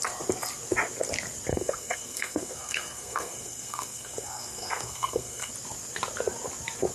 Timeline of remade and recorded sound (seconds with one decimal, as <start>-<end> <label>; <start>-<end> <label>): 0.0-1.5 recorded; 1.5-5.5 remade; 5.5-6.9 recorded